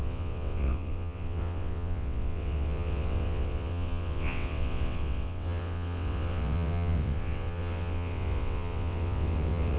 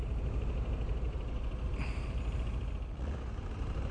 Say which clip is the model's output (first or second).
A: first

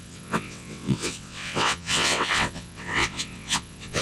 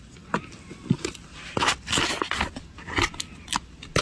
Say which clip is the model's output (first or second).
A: first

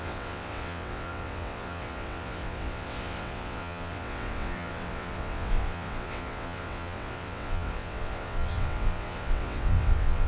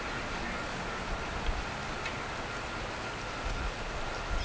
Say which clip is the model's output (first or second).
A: first